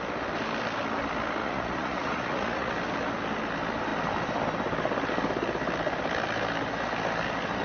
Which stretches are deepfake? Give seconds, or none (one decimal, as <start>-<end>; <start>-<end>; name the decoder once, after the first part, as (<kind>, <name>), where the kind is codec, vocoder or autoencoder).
1.4-2.7 (vocoder, Vocos)